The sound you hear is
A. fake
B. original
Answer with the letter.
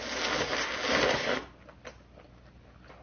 B